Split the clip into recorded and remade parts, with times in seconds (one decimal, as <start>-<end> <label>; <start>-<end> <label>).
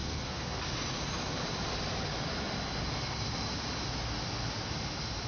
0.0-0.6 remade; 0.6-5.3 recorded